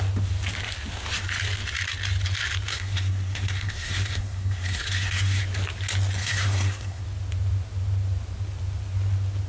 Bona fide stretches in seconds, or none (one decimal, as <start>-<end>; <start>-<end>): 0.0-2.7; 5.4-6.2; 7.0-9.5